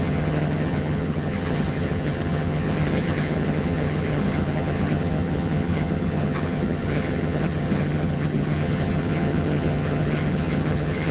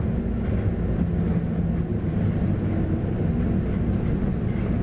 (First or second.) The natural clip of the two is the second